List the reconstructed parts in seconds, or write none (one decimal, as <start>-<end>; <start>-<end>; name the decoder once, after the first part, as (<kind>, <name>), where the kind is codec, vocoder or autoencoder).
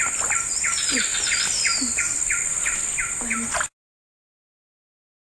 none